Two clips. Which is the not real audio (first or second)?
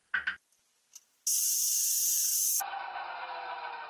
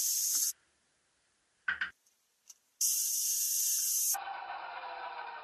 second